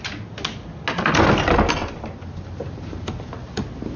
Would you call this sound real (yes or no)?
yes